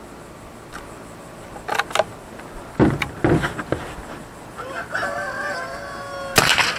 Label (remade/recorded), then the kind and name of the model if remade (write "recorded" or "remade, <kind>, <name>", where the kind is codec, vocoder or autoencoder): recorded